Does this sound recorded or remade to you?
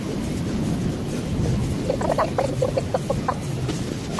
recorded